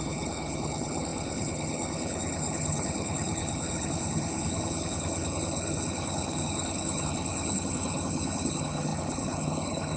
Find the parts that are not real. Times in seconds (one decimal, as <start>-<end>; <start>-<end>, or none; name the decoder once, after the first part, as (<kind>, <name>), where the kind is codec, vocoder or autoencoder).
0.0-10.0 (codec, HILCodec)